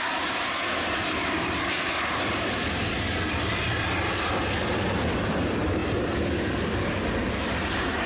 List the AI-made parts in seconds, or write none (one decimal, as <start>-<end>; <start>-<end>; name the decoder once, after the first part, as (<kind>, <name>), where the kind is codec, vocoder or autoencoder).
none